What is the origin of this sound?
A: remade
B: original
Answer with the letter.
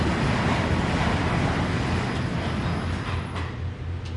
B